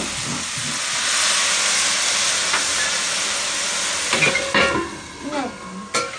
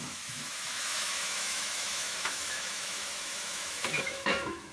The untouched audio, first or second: first